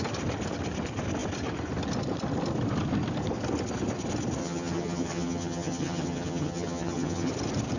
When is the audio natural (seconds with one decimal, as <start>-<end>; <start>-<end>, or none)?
0.0-4.4; 7.3-7.8